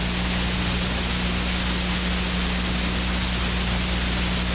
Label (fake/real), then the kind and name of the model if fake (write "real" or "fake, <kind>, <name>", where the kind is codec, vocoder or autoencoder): real